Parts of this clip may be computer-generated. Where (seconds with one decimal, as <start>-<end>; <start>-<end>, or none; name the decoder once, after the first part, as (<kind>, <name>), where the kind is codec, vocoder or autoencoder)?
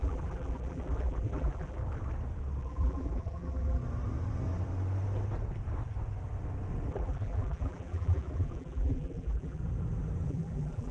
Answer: 0.0-1.8 (vocoder, BigVGAN v2); 2.6-3.8; 6.9-9.6; 10.3-10.9